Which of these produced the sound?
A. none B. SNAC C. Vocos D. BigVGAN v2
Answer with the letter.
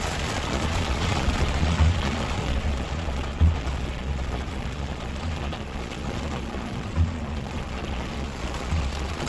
C